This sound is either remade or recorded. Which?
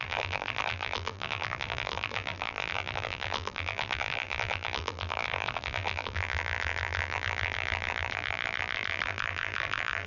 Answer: remade